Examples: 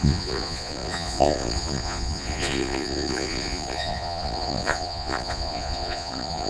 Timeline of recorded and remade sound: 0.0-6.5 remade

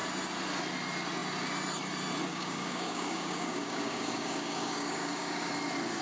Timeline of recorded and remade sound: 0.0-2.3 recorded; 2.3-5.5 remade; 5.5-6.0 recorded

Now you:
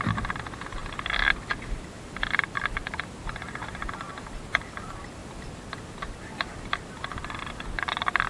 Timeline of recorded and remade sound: 0.0-8.3 recorded

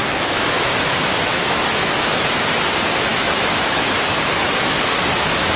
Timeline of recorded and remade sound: 0.0-1.9 remade; 1.9-3.1 recorded; 3.1-5.6 remade

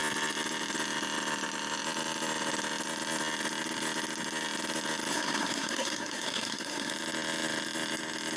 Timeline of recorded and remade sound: 0.0-5.1 recorded; 5.1-6.9 remade; 6.9-8.4 recorded

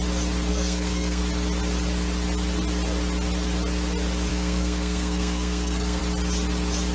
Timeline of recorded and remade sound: 0.0-0.5 recorded; 0.5-1.2 remade; 1.2-4.3 recorded; 4.3-6.0 remade; 6.0-6.9 recorded

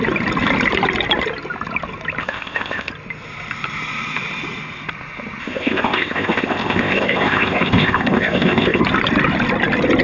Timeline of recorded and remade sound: 0.0-2.2 recorded; 2.2-2.9 remade; 2.9-5.4 recorded; 5.4-8.8 remade; 8.8-10.0 recorded